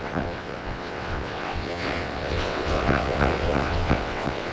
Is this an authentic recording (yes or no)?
no